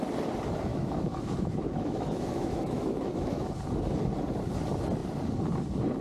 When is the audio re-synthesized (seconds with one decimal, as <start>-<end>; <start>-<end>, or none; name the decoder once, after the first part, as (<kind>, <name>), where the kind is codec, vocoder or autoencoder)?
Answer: 0.7-3.5 (autoencoder, DAC-VAE)